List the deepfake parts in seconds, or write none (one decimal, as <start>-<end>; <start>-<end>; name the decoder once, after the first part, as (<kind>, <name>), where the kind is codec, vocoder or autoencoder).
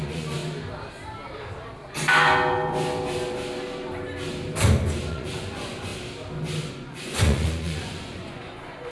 0.0-0.4 (vocoder, Vocos); 5.1-5.9; 6.7-8.9